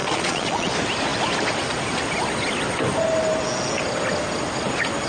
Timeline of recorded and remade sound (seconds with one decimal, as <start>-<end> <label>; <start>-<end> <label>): 0.0-0.7 remade; 0.7-5.1 recorded